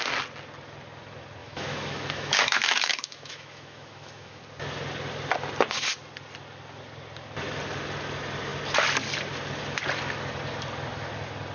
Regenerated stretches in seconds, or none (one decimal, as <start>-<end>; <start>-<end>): 1.4-4.4